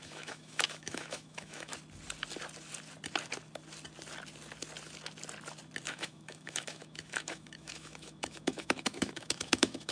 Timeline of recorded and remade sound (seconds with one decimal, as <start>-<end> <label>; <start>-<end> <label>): 0.0-1.7 remade; 1.7-5.9 recorded; 5.9-9.9 remade